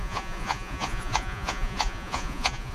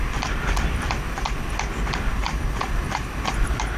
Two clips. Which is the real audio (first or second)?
second